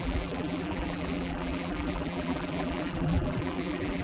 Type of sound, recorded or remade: remade